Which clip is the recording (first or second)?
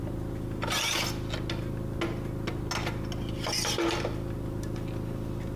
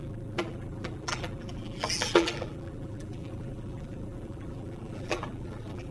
first